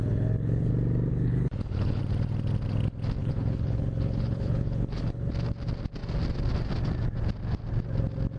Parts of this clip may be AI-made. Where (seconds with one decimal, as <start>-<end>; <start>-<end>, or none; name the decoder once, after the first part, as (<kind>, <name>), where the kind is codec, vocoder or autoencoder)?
0.0-0.7 (codec, HILCodec); 1.1-2.0; 3.2-5.3